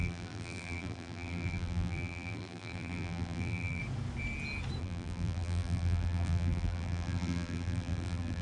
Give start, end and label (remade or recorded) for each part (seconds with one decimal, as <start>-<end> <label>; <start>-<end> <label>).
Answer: 0.0-3.8 remade; 3.8-4.8 recorded; 4.8-8.4 remade